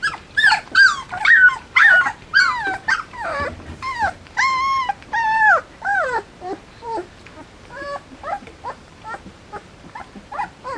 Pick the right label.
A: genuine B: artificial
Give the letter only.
B